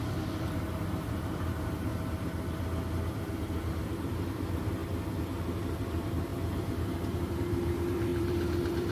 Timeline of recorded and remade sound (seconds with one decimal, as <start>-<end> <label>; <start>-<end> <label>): 0.0-1.9 remade; 1.9-3.7 recorded; 3.7-4.8 remade; 4.8-5.6 recorded; 5.6-8.9 remade